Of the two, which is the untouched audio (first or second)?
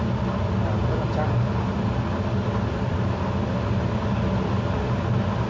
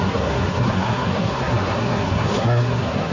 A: first